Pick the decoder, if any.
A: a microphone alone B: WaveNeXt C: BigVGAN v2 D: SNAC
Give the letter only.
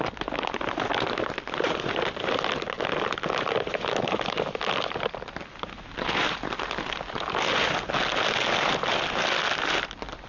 A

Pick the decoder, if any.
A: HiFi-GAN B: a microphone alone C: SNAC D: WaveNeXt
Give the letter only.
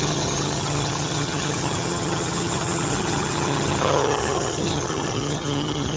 A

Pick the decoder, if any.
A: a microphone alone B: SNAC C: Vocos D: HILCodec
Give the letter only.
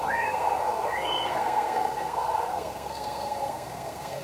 B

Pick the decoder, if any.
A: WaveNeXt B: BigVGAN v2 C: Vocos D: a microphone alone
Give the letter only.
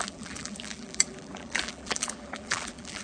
B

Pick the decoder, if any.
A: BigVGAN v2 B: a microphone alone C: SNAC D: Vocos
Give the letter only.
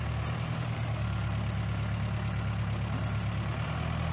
B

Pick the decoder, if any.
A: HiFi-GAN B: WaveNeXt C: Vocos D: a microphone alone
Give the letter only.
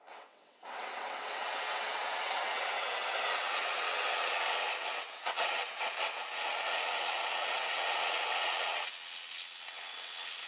B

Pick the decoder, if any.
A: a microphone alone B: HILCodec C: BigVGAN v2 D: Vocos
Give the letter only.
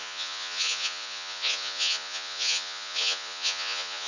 D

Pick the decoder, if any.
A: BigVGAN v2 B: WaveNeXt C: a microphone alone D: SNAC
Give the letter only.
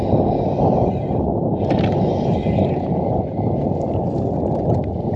C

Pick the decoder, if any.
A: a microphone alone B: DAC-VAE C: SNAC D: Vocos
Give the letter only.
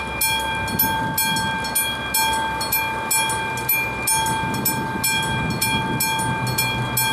A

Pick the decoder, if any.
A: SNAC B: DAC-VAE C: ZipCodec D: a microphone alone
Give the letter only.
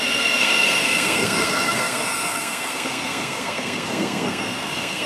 A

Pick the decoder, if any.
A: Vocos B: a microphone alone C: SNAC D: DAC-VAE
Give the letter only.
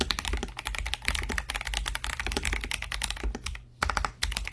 B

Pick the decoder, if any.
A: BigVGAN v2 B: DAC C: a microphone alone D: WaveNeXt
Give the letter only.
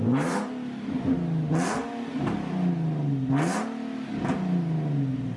C